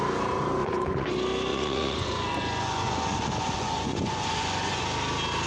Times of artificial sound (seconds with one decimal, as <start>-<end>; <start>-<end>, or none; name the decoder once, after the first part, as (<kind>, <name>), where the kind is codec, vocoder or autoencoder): 0.6-1.1 (vocoder, Vocos); 1.5-4.8